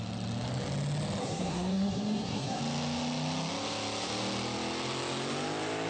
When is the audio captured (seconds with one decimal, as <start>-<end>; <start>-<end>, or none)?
0.0-1.2; 2.6-5.9